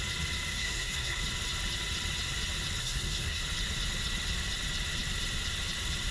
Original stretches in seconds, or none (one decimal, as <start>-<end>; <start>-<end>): 0.0-0.5; 1.2-2.8; 3.4-6.1